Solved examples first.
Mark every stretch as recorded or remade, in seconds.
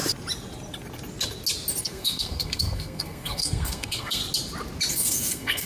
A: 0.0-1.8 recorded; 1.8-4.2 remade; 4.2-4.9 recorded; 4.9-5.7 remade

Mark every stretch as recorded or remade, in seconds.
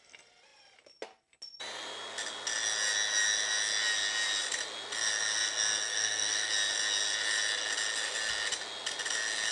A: 0.0-5.8 recorded; 5.8-6.5 remade; 6.5-9.5 recorded